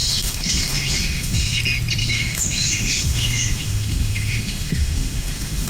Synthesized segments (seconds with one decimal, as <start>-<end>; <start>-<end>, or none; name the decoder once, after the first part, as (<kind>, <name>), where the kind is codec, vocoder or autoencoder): 0.0-1.6 (autoencoder, DAC-VAE); 2.0-5.7